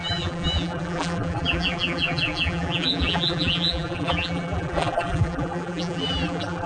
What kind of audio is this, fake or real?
fake